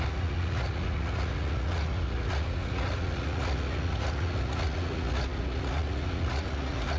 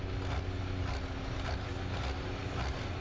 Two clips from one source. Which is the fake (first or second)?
first